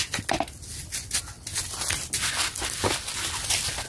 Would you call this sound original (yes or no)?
yes